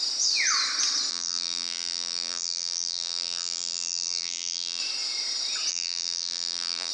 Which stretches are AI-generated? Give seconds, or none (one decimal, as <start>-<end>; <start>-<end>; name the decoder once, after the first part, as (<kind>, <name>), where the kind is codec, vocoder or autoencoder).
1.1-4.8 (vocoder, BigVGAN v2); 5.7-6.9